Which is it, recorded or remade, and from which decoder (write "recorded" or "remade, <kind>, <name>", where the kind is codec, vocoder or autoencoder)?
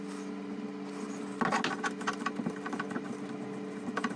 recorded